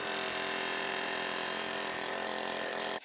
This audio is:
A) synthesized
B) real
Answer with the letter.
A